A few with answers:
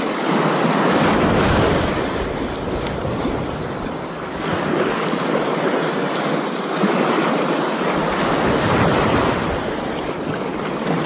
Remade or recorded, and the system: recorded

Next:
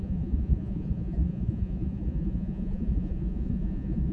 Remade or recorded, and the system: remade, vocoder, Vocos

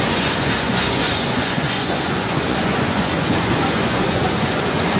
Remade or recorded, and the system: remade, vocoder, Vocos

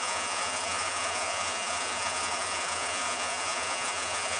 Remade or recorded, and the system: remade, vocoder, Vocos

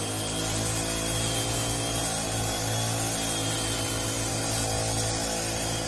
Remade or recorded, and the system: recorded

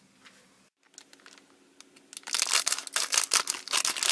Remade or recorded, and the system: recorded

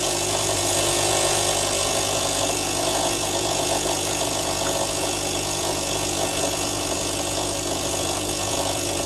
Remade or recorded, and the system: remade, vocoder, Vocos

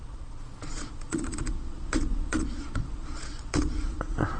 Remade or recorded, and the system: remade, vocoder, Vocos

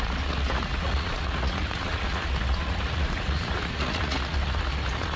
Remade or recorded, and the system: remade, vocoder, Vocos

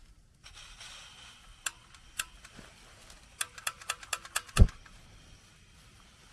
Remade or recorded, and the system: recorded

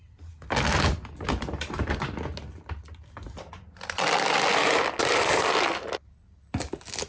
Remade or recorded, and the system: recorded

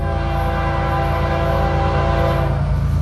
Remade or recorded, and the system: recorded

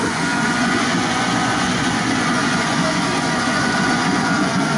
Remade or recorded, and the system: remade, vocoder, Vocos